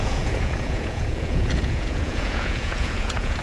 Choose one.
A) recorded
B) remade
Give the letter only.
B